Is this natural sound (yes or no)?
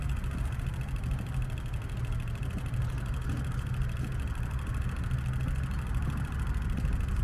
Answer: yes